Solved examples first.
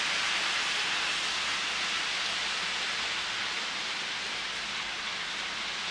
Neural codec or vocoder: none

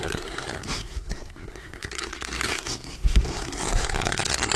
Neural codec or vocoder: codec, SNAC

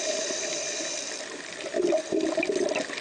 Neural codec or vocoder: none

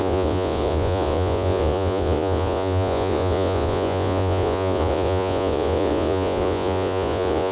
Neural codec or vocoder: vocoder, Vocos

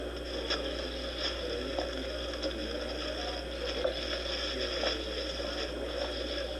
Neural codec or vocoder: none